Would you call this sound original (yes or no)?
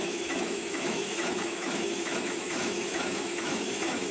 no